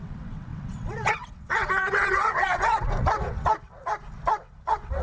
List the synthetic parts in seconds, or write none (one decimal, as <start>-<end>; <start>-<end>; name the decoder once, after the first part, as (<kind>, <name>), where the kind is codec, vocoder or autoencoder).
0.0-3.9 (vocoder, WaveNeXt); 4.4-5.0